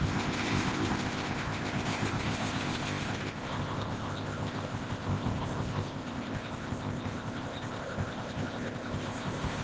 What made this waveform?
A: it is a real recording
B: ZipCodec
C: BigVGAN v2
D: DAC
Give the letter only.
B